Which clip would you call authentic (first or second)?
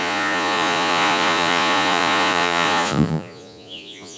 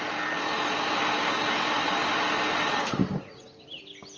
second